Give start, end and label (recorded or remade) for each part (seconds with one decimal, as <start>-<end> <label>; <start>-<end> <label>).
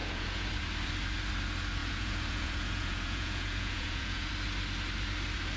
0.0-0.5 remade; 0.5-1.8 recorded; 1.8-4.3 remade; 4.3-5.6 recorded